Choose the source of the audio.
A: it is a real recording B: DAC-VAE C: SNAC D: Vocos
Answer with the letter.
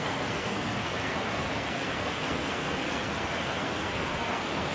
C